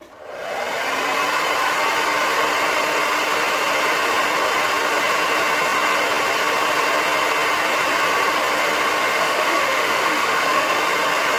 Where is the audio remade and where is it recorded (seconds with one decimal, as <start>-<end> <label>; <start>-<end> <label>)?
0.0-9.0 recorded; 9.0-10.8 remade; 10.8-11.4 recorded